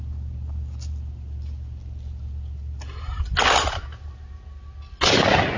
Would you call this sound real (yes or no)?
yes